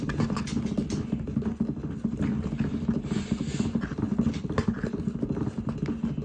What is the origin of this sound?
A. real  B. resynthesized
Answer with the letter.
A